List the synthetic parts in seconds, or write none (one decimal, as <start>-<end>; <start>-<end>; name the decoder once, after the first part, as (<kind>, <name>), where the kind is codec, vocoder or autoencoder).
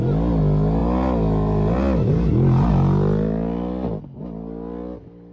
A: none